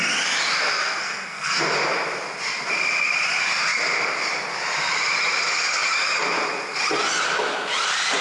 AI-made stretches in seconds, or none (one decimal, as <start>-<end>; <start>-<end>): 0.8-1.6